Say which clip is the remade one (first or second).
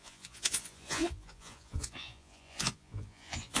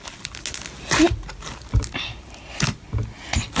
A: first